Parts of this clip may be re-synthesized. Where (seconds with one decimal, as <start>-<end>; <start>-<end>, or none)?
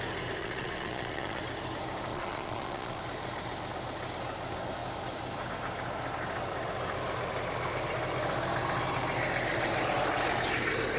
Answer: 0.4-1.4; 2.1-3.0